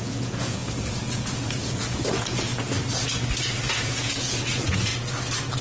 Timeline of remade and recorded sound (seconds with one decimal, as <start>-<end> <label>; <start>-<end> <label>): 0.0-2.5 remade; 2.5-3.7 recorded; 3.7-4.9 remade; 4.9-5.6 recorded